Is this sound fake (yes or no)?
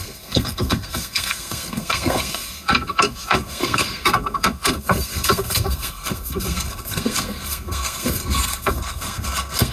yes